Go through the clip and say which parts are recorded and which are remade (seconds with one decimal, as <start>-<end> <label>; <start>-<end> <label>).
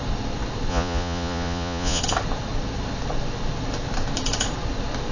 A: 0.0-0.7 recorded; 0.7-2.0 remade; 2.0-5.1 recorded